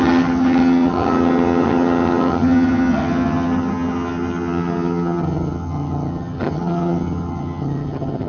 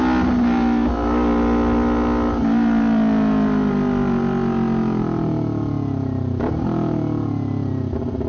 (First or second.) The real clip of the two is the second